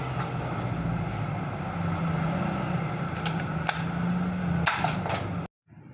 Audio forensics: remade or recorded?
recorded